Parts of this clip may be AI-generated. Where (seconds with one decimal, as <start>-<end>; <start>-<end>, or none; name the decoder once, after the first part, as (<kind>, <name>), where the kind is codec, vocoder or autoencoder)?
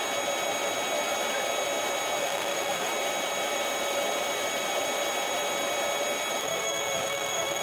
2.2-2.9 (autoencoder, DAC-VAE); 6.4-7.6